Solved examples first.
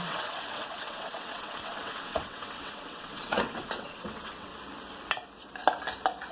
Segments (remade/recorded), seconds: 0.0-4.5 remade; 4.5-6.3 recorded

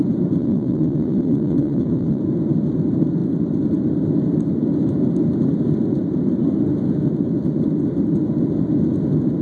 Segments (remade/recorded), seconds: 0.0-0.4 recorded; 0.4-2.2 remade; 2.2-9.4 recorded

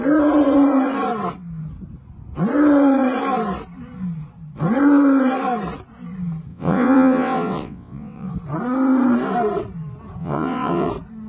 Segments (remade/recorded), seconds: 0.0-6.5 recorded; 6.5-8.3 remade; 8.3-10.2 recorded; 10.2-10.9 remade; 10.9-11.3 recorded

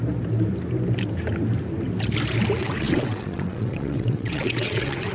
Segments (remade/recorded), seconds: 0.0-2.6 recorded; 2.6-5.1 remade

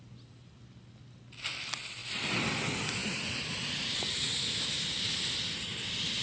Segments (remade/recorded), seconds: 0.0-6.2 recorded